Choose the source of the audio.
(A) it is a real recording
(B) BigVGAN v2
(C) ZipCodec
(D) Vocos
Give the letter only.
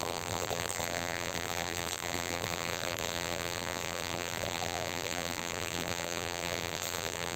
B